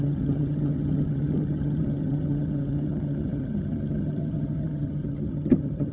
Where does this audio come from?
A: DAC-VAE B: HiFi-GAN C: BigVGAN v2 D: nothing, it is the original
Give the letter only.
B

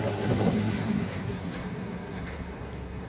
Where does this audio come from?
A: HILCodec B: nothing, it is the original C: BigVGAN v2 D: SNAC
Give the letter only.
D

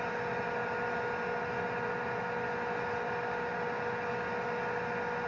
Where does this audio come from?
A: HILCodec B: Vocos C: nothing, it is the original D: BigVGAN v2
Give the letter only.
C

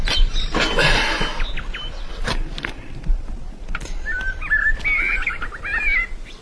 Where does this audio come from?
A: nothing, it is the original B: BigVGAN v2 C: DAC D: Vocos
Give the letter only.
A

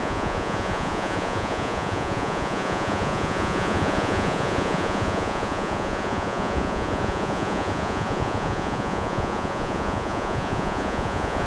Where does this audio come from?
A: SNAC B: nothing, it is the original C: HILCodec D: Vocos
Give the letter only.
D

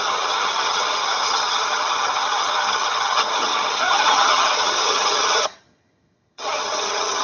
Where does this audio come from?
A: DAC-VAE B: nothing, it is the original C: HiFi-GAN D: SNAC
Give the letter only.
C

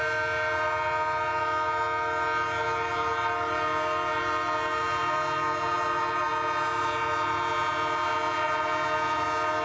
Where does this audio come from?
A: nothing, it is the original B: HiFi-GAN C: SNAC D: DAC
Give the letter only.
A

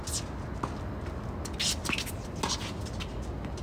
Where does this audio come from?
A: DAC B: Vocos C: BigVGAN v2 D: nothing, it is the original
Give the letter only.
D